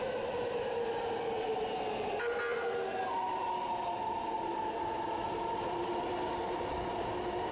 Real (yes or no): yes